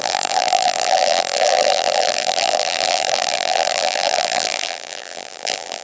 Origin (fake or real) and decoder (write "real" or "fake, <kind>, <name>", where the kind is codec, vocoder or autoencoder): fake, vocoder, BigVGAN v2